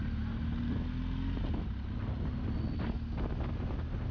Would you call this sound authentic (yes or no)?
yes